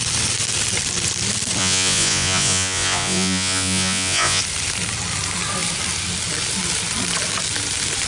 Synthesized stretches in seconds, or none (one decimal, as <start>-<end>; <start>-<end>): 1.6-4.4